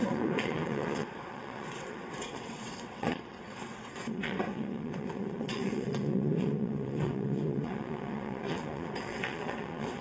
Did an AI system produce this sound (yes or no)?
yes